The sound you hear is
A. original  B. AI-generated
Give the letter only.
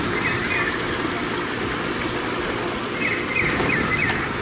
A